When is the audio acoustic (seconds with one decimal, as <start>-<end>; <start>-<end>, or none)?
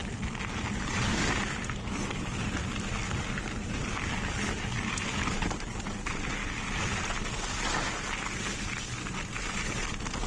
0.0-10.3